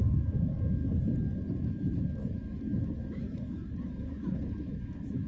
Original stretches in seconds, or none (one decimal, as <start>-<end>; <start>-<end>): 0.8-1.6